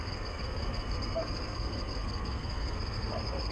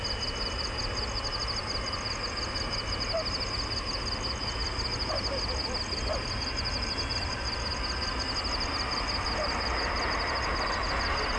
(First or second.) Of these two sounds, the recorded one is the second